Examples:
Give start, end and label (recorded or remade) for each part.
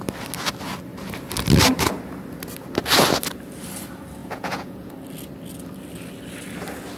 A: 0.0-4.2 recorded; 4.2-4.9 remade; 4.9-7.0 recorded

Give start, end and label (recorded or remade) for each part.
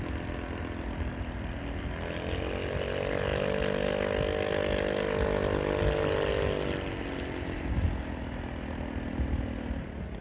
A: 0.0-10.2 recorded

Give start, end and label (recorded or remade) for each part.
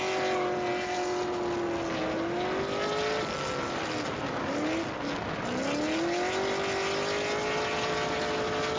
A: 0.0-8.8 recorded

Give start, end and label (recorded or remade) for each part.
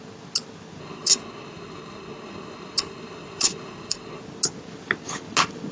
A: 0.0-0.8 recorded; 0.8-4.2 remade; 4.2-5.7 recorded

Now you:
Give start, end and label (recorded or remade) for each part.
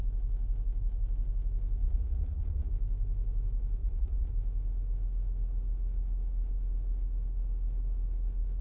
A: 0.0-1.8 recorded; 1.8-2.7 remade; 2.7-3.8 recorded; 3.8-4.3 remade; 4.3-8.6 recorded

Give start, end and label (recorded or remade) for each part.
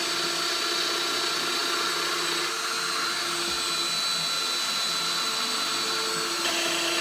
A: 0.0-7.0 recorded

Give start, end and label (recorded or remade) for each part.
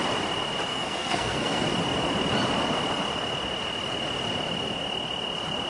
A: 0.0-0.7 recorded; 0.7-1.6 remade; 1.6-5.7 recorded